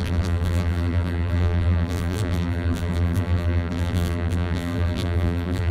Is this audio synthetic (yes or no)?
yes